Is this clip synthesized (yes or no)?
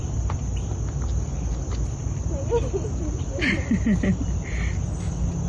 no